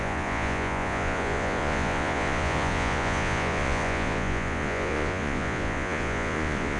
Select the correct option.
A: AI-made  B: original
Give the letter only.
A